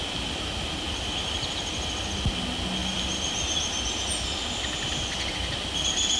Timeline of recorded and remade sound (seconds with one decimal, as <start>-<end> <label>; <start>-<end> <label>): 0.0-6.2 recorded